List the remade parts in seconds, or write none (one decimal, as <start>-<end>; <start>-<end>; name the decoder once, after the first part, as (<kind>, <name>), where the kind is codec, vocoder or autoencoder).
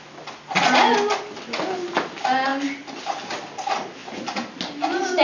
none